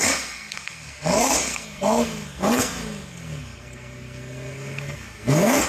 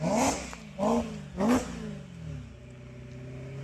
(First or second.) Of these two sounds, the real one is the second